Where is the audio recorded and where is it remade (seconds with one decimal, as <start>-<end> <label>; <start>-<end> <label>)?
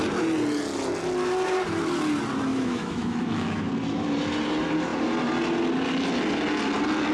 0.0-2.5 recorded; 2.5-3.7 remade; 3.7-7.1 recorded